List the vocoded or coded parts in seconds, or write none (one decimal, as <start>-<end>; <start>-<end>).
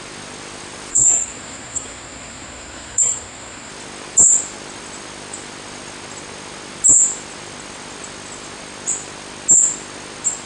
0.9-3.7